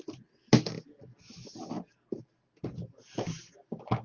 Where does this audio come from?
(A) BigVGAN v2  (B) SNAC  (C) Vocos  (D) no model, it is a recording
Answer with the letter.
D